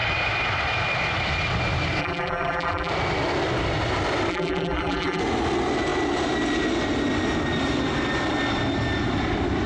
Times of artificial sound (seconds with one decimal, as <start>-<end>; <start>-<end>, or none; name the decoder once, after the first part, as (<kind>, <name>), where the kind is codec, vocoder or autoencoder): 2.0-2.9 (vocoder, BigVGAN v2); 4.3-5.2